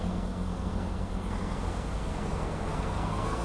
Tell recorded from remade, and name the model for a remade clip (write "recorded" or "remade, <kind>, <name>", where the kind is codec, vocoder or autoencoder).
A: remade, codec, SNAC